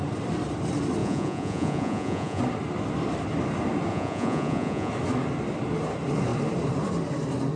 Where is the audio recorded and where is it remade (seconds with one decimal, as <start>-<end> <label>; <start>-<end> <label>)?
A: 0.0-1.0 recorded; 1.0-2.4 remade; 2.4-3.9 recorded; 3.9-4.9 remade; 4.9-7.6 recorded